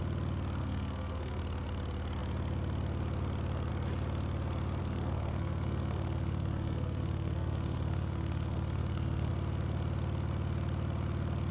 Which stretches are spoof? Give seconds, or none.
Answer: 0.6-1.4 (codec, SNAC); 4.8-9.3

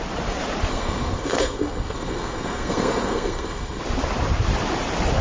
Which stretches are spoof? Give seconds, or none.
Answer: 0.7-3.8 (codec, SNAC)

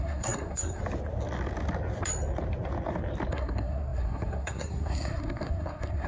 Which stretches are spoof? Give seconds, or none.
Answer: 0.0-0.8 (codec, SNAC); 3.3-6.1

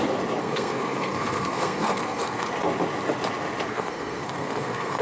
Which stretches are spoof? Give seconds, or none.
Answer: 0.4-2.5 (codec, SNAC); 3.7-5.0

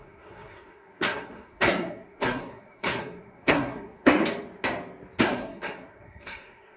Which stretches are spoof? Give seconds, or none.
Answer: 0.0-4.2 (codec, SNAC); 5.2-6.8